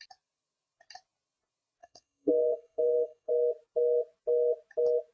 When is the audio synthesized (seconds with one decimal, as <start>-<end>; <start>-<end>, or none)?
1.8-3.3